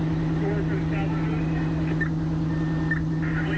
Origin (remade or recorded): recorded